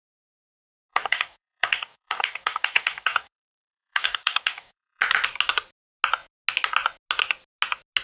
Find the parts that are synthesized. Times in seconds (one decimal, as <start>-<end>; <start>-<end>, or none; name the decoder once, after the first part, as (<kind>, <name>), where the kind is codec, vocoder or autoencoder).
0.9-5.0 (codec, DAC)